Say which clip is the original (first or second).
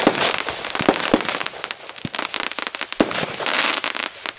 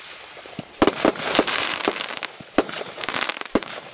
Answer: first